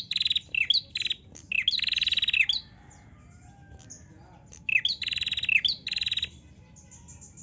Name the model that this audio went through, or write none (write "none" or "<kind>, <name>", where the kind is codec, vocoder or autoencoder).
none